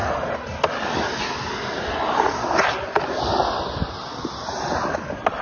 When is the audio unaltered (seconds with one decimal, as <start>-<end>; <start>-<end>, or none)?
0.0-5.4